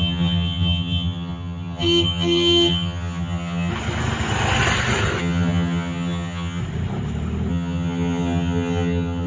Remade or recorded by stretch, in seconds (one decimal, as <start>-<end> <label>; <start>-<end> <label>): 0.0-3.7 remade; 3.7-5.2 recorded; 5.2-6.6 remade; 6.6-7.5 recorded; 7.5-9.3 remade